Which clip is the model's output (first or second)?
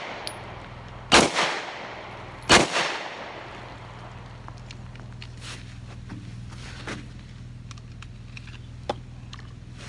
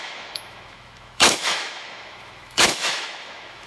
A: second